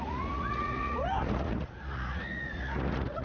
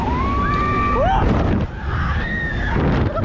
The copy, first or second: first